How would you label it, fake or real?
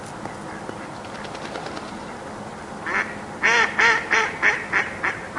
real